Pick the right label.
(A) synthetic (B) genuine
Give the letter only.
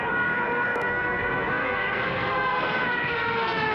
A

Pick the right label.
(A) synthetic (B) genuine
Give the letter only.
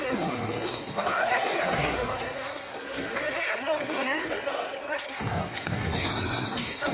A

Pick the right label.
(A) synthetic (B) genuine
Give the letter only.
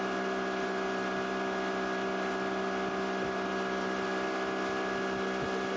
B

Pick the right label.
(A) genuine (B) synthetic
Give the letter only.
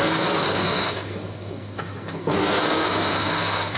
B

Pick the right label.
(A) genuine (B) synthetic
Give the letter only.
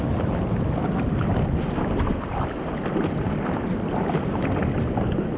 A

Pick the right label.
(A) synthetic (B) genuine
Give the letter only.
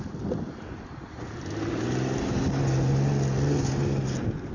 B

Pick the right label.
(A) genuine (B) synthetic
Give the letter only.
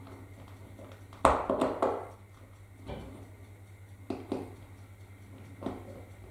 A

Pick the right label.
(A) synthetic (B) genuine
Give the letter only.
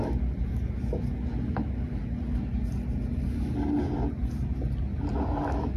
B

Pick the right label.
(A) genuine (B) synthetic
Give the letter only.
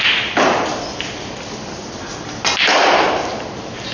A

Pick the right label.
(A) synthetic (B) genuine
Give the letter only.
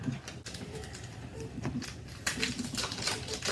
B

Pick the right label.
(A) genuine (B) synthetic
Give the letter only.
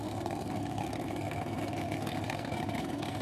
B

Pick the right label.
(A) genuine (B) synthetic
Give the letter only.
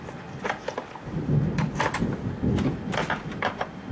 A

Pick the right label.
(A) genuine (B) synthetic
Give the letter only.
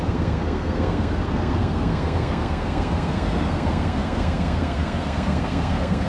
B